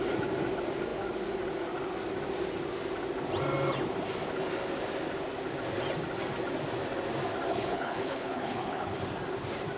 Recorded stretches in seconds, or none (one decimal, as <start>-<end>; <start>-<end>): 0.0-7.5; 9.0-9.8